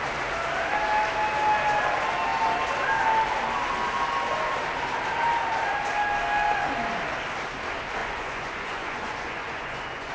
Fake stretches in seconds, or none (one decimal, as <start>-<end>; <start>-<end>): 8.0-10.1